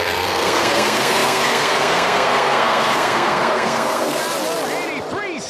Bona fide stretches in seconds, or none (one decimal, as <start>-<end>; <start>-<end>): 4.2-5.5